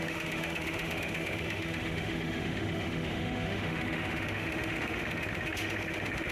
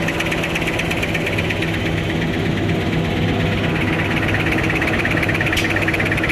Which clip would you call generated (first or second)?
first